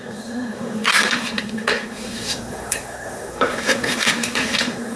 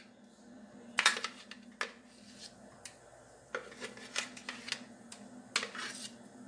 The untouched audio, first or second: second